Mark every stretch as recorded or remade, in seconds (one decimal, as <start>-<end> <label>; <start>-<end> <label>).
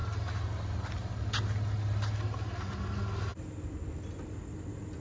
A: 0.0-5.0 recorded